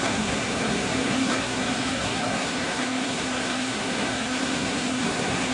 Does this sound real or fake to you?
fake